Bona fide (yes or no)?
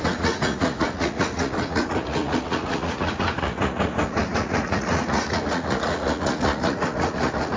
no